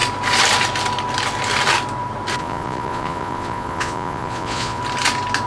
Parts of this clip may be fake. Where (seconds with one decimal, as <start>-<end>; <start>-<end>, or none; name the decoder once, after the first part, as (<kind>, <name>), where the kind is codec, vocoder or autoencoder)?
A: 2.4-4.8 (vocoder, Vocos)